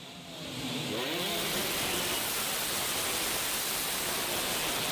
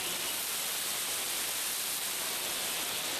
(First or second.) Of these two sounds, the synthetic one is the second